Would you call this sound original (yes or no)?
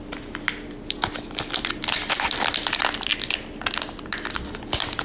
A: yes